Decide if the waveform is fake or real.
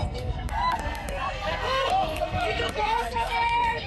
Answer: fake